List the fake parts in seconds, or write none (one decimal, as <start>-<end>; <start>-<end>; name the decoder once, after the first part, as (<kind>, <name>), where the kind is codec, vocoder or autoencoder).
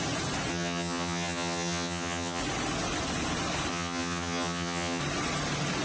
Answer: 0.5-2.4 (vocoder, HiFi-GAN); 3.7-5.0